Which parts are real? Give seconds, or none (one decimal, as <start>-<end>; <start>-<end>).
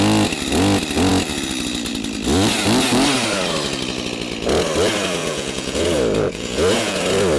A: 0.0-5.2; 7.0-7.4